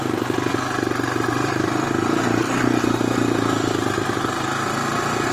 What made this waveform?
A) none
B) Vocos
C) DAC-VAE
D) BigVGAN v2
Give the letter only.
A